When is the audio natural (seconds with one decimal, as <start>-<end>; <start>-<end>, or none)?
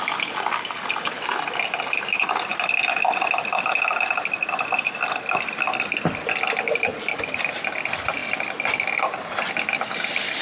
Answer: 0.0-10.4